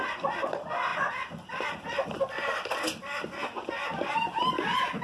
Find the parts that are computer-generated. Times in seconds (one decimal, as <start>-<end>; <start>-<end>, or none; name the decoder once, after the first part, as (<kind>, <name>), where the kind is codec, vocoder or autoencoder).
none